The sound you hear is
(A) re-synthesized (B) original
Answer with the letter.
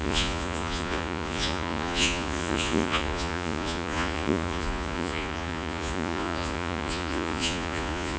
A